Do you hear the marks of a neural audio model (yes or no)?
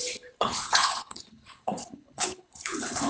yes